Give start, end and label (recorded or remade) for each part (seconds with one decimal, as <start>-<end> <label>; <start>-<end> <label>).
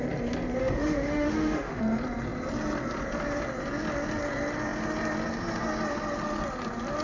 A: 0.0-0.6 recorded; 0.6-1.8 remade; 1.8-7.0 recorded